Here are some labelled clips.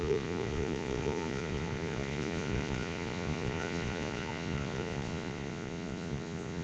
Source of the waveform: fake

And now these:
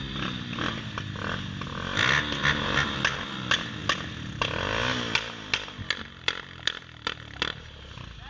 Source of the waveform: real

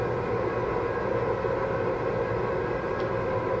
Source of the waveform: real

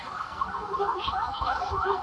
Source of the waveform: fake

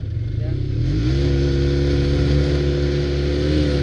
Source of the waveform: real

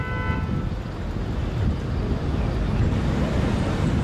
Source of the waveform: real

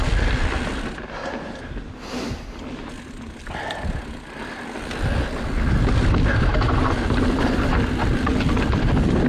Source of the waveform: real